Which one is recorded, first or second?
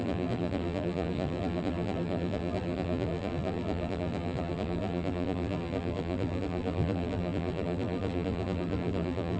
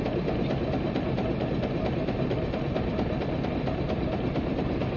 second